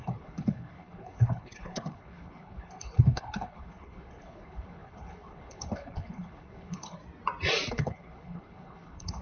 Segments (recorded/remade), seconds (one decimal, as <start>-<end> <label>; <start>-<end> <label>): 0.0-7.0 remade; 7.0-7.7 recorded; 7.7-9.2 remade